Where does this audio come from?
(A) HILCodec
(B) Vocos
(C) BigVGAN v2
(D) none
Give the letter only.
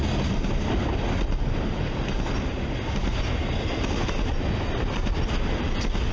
D